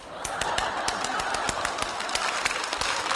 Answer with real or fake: real